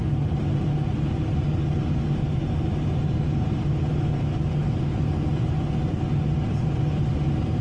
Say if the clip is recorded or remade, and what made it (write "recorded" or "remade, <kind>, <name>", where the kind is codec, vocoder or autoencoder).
recorded